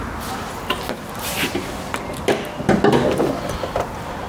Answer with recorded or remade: recorded